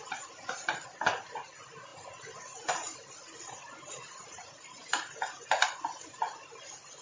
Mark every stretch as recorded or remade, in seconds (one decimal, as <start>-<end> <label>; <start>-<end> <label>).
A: 0.0-7.0 recorded